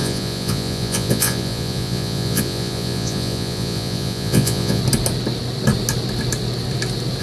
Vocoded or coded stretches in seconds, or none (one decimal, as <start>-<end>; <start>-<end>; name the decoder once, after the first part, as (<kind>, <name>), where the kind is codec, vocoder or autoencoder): 0.0-4.8 (vocoder, Vocos)